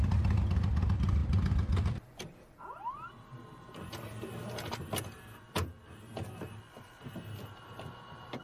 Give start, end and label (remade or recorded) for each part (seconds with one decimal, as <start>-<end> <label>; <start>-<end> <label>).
0.0-1.2 recorded; 1.2-2.6 remade; 2.6-8.4 recorded